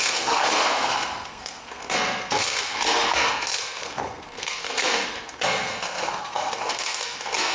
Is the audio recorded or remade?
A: remade